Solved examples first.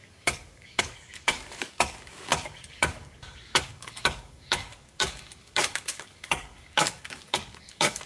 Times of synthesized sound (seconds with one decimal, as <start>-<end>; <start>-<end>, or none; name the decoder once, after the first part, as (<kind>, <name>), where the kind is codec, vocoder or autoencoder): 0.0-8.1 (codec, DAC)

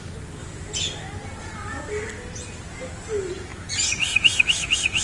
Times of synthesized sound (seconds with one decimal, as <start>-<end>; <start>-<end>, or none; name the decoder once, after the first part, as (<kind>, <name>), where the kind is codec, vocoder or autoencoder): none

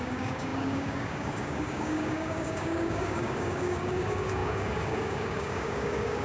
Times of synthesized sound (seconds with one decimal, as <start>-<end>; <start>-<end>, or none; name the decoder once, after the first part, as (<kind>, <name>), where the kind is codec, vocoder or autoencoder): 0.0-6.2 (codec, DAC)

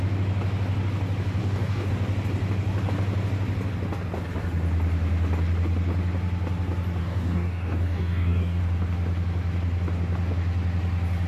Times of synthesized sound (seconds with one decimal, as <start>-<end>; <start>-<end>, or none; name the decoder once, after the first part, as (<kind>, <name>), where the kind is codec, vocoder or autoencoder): 1.4-1.9 (codec, DAC); 7.0-8.6